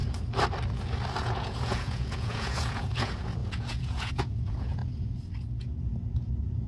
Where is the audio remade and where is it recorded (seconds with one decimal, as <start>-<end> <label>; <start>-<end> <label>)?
0.0-1.2 recorded; 1.2-4.8 remade; 4.8-5.6 recorded; 5.6-6.7 remade